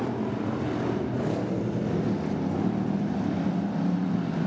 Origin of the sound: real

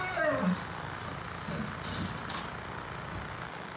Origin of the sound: real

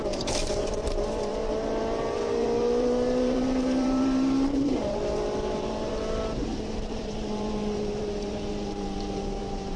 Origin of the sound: fake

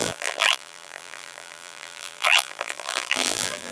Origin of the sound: fake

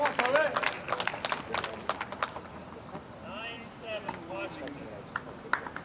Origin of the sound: real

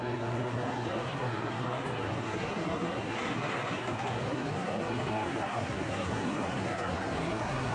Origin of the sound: fake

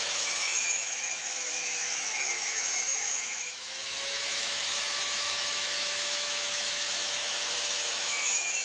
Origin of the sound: fake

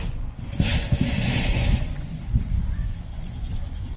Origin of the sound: fake